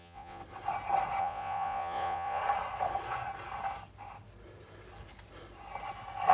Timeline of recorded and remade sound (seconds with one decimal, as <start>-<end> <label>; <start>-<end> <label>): 0.0-0.4 remade; 0.4-1.2 recorded; 1.2-2.4 remade; 2.4-6.3 recorded